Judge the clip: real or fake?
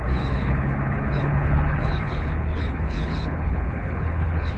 fake